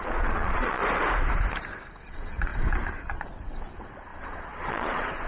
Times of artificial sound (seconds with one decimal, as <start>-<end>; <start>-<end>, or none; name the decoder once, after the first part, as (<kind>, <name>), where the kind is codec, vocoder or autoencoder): 0.0-0.8 (vocoder, Vocos); 2.0-2.5; 3.0-5.3